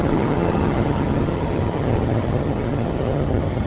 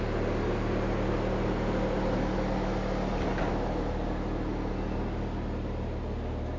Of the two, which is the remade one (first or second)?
first